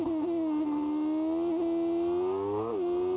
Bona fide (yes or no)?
yes